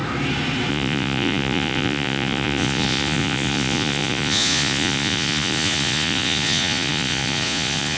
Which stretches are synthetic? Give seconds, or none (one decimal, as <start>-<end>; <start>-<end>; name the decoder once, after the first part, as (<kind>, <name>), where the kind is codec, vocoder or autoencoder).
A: 0.7-8.0 (vocoder, Vocos)